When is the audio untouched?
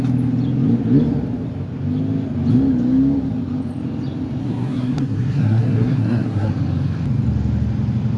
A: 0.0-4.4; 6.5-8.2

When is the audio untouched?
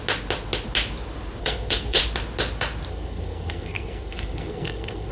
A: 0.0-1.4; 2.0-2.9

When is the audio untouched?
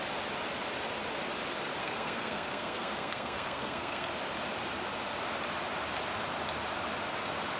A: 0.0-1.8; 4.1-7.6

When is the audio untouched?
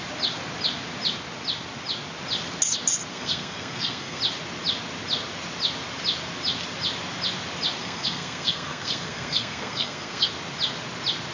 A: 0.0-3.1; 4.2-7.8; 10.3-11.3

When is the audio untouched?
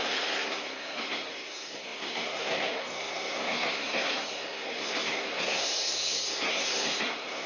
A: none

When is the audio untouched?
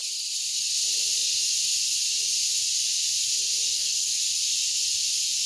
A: 0.0-3.7; 4.2-5.5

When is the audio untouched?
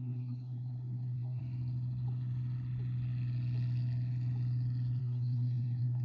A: 1.4-5.0